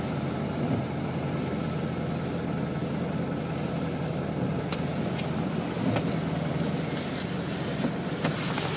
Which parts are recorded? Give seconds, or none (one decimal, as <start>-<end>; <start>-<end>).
0.0-8.8